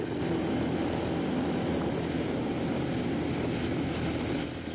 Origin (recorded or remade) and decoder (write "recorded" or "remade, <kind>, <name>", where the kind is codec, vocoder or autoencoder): recorded